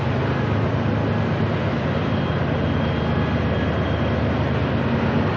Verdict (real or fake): real